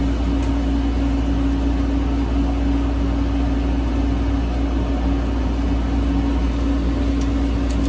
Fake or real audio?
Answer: real